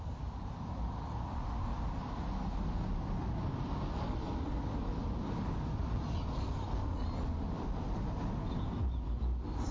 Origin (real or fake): real